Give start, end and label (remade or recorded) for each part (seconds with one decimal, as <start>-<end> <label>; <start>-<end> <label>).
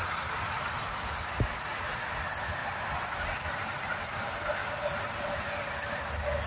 0.0-6.5 recorded